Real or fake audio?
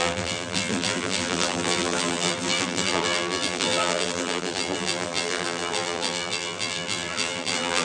fake